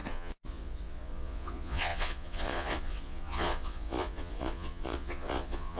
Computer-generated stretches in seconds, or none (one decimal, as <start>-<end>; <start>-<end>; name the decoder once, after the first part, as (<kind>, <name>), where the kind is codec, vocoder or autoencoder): 0.0-5.8 (vocoder, Vocos)